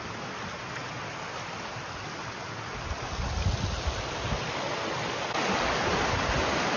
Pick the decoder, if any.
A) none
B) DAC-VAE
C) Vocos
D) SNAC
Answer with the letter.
A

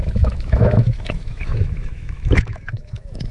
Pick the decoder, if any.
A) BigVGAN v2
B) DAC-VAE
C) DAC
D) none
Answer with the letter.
B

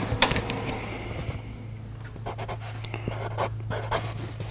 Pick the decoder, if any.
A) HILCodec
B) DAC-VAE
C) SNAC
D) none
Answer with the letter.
D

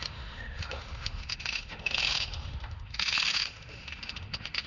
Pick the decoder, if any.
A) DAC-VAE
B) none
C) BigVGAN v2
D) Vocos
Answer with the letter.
A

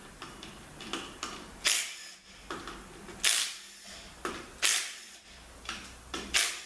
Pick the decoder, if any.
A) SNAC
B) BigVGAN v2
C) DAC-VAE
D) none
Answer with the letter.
D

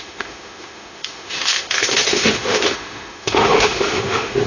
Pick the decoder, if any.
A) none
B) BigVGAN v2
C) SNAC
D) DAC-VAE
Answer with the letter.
D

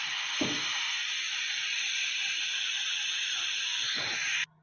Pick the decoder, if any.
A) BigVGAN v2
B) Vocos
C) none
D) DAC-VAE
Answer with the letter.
C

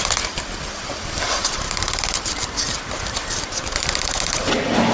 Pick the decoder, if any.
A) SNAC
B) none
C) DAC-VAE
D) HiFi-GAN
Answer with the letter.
B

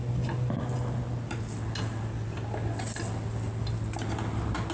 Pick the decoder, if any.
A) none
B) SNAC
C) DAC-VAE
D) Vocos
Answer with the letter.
A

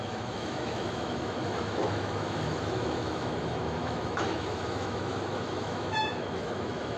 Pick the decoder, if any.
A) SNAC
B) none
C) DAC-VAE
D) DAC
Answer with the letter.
C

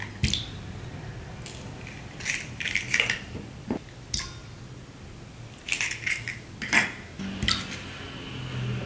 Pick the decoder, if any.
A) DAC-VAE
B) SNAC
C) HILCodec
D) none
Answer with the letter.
D